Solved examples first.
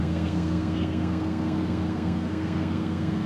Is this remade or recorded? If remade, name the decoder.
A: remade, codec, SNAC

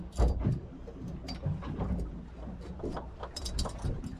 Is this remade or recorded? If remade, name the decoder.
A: recorded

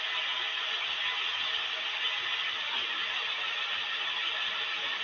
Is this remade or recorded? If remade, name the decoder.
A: recorded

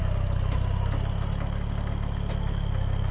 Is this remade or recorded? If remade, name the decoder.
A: recorded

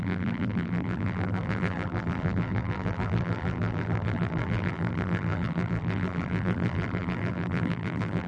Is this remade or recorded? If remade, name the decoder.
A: remade, vocoder, BigVGAN v2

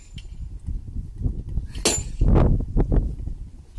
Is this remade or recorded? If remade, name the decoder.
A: recorded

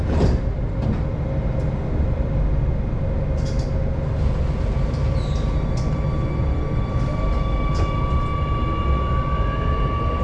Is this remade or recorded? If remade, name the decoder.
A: recorded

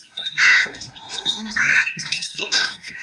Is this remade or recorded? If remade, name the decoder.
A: remade, codec, SNAC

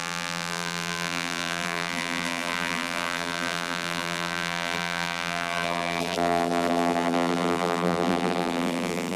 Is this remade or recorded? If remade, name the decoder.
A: remade, vocoder, BigVGAN v2